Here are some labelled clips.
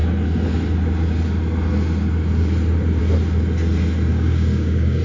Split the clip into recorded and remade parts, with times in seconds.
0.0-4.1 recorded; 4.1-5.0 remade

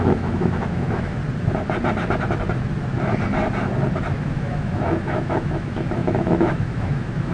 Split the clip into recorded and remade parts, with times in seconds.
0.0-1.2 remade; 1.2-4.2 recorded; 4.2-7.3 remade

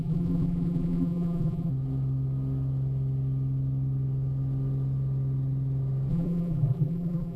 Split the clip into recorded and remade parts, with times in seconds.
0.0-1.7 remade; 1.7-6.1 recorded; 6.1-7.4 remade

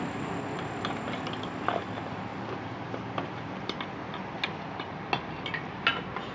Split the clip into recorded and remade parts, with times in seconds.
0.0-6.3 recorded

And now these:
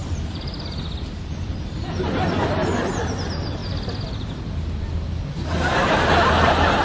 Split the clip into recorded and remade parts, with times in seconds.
0.0-1.1 remade; 1.1-6.8 recorded